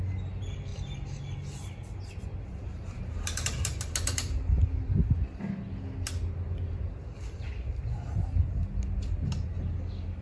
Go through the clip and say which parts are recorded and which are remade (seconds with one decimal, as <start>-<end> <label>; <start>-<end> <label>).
0.0-10.2 recorded